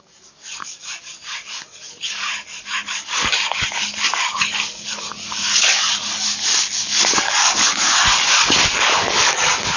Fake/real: fake